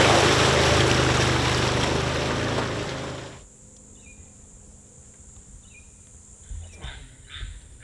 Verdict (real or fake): real